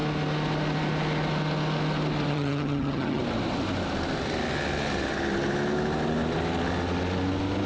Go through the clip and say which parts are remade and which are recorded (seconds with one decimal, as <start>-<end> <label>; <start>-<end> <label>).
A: 0.0-2.3 recorded; 2.3-3.2 remade; 3.2-7.7 recorded